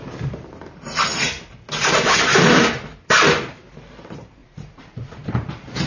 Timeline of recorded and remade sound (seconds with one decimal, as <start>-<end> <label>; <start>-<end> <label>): 0.0-4.4 recorded; 4.4-5.5 remade; 5.5-5.9 recorded